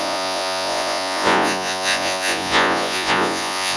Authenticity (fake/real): fake